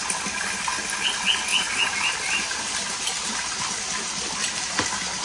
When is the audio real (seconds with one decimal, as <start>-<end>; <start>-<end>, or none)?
0.0-1.5; 4.6-5.2